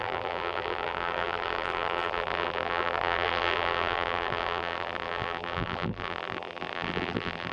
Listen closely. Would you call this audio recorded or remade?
remade